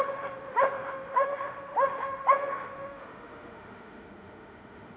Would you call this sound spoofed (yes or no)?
yes